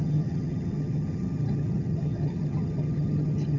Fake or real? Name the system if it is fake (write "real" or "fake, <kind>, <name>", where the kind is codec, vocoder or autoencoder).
fake, vocoder, HiFi-GAN